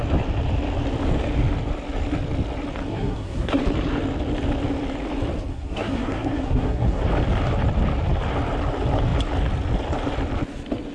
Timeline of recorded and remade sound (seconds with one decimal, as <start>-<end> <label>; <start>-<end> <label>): 0.0-2.9 recorded; 2.9-3.6 remade; 3.6-5.5 recorded; 5.5-7.0 remade; 7.0-10.9 recorded